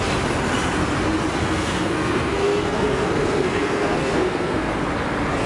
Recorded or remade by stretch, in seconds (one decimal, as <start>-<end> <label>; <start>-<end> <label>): 0.0-1.4 recorded; 1.4-4.7 remade; 4.7-5.5 recorded